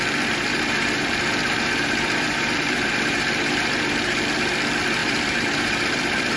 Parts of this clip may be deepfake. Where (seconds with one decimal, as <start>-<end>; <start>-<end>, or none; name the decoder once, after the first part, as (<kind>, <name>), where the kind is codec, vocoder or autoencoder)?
0.5-4.3 (vocoder, BigVGAN v2); 5.0-6.4